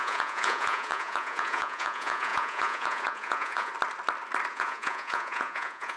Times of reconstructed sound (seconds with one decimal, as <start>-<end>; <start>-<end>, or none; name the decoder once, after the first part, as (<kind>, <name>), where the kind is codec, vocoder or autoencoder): 0.0-3.7 (vocoder, Vocos); 4.5-6.0